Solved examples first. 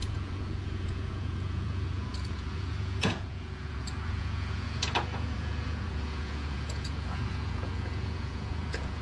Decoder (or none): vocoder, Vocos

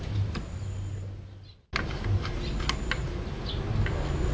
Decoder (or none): none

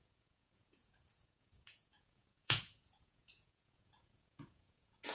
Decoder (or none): vocoder, Vocos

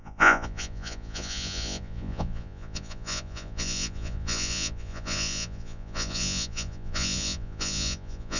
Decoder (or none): vocoder, Vocos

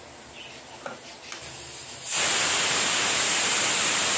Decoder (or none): none